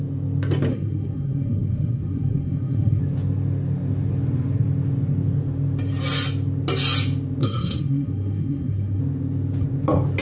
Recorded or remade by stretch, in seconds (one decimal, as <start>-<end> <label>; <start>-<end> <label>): 0.0-0.7 recorded; 0.7-3.0 remade; 3.0-7.4 recorded; 7.4-9.0 remade; 9.0-10.2 recorded